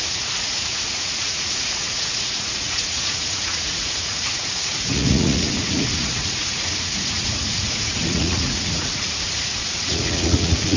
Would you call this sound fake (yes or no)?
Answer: yes